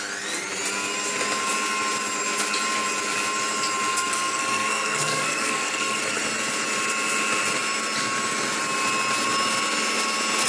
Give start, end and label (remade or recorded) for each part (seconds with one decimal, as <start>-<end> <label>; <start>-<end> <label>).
0.0-3.9 recorded; 3.9-6.0 remade; 6.0-10.5 recorded